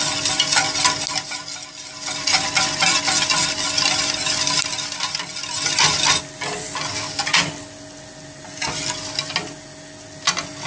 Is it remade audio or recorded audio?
recorded